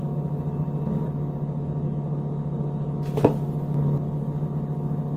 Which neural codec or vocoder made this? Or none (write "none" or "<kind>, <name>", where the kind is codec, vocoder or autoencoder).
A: none